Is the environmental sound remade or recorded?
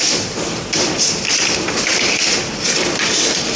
recorded